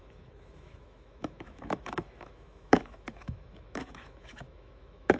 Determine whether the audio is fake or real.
fake